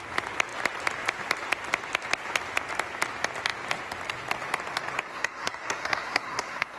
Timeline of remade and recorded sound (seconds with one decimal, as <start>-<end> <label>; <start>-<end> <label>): 0.0-5.1 recorded; 5.1-6.8 remade